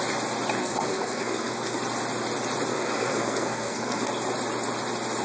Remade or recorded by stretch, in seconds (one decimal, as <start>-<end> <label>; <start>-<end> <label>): 0.0-0.6 recorded; 0.6-1.8 remade; 1.8-2.7 recorded; 2.7-4.1 remade; 4.1-5.2 recorded